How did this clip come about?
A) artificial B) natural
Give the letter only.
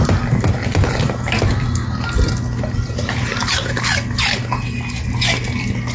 B